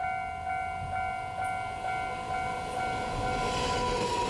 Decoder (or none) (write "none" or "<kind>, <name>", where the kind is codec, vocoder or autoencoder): none